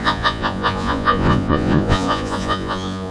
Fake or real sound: fake